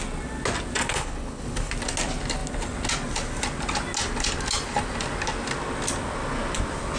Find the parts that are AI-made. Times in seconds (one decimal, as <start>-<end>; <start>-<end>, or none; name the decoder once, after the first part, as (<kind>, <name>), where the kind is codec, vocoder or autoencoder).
0.8-1.7 (codec, HILCodec)

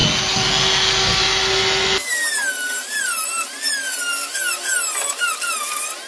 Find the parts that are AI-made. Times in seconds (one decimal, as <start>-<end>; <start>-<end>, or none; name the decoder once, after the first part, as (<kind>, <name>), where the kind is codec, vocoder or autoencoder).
none

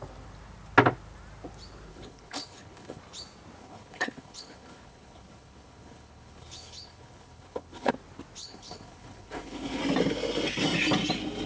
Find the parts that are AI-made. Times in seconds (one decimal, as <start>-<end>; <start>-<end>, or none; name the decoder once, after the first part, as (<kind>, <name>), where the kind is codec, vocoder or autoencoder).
1.9-3.0 (codec, HILCodec); 3.6-7.9; 8.4-9.8

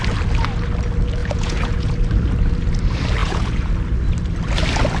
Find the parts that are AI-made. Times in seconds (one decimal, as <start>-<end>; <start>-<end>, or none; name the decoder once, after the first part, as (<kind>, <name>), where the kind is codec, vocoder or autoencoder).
1.2-1.9 (vocoder, Vocos); 3.2-3.7

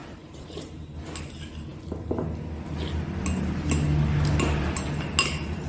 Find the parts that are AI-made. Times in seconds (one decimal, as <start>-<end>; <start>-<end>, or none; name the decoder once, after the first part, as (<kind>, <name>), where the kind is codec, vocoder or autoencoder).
0.0-1.0 (vocoder, BigVGAN v2)